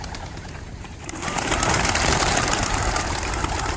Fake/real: fake